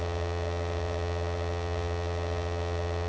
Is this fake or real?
fake